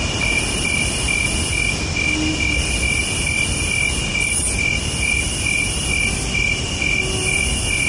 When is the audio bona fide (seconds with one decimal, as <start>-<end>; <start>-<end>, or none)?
0.0-7.9